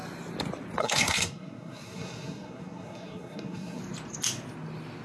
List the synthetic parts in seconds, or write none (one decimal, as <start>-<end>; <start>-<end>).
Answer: 0.8-3.8

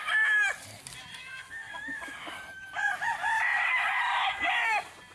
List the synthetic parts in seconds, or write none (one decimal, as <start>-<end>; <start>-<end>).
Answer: 1.1-2.0

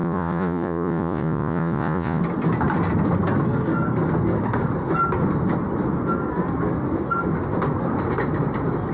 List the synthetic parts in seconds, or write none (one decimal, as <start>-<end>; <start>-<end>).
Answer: 0.0-2.2

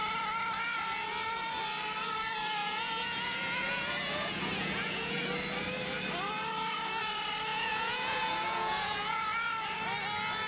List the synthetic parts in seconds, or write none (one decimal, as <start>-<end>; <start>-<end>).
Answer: 2.6-5.2; 7.5-9.2